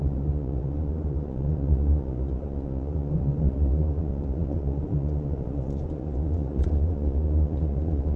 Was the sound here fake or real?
fake